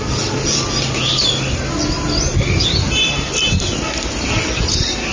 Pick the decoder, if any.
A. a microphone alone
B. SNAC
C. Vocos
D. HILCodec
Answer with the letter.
A